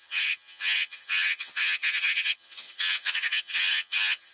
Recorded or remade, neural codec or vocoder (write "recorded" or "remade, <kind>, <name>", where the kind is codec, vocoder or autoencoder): remade, vocoder, HiFi-GAN